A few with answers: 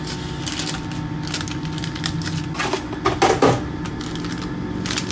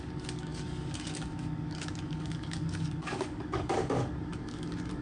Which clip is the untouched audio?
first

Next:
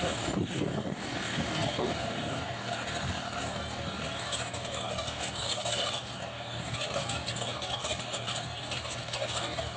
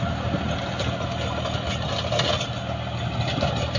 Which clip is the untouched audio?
second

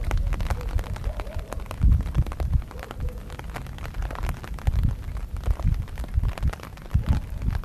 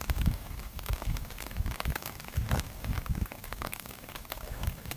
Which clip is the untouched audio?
first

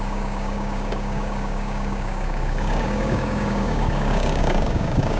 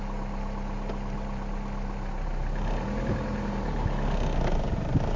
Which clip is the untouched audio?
second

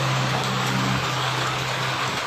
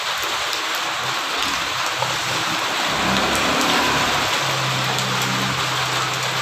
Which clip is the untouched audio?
second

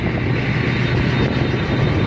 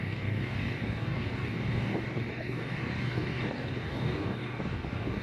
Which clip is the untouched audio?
first